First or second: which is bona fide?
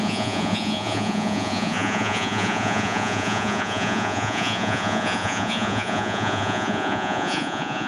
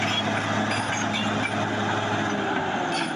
second